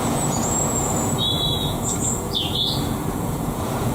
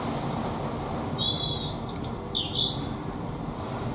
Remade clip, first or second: first